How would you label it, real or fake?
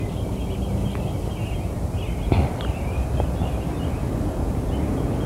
real